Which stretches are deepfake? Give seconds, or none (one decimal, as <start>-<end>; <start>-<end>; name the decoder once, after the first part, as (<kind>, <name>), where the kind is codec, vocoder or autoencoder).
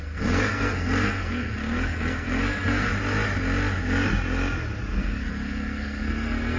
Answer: 0.0-2.9 (codec, SNAC); 5.0-6.6